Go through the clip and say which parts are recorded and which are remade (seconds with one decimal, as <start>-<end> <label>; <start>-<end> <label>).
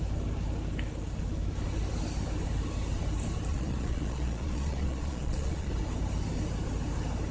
0.0-3.5 recorded; 3.5-5.7 remade; 5.7-7.3 recorded